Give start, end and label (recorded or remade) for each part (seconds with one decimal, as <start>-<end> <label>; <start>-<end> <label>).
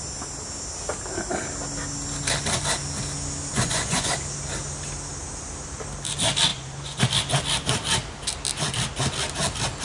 0.0-3.5 recorded; 3.5-4.1 remade; 4.1-6.5 recorded; 6.5-7.0 remade; 7.0-9.8 recorded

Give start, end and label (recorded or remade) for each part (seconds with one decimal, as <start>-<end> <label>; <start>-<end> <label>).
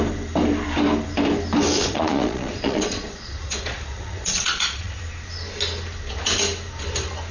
0.0-1.8 recorded; 1.8-5.0 remade; 5.0-7.3 recorded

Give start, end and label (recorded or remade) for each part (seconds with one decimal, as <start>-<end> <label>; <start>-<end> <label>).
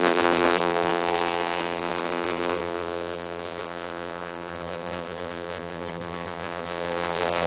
0.0-7.5 remade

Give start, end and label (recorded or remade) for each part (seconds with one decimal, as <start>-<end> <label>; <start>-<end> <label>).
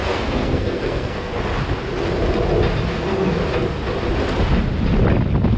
0.0-1.3 remade; 1.3-2.9 recorded; 2.9-3.4 remade; 3.4-5.6 recorded